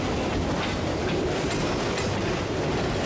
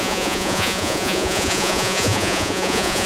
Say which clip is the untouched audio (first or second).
first